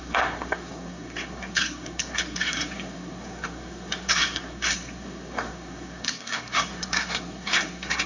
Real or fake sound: fake